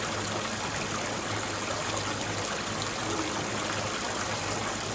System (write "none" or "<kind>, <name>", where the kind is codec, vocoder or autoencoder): none